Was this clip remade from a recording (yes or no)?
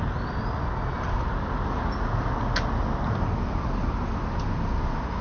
no